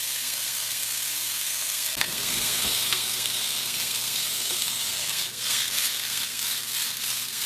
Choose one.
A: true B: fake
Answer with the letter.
B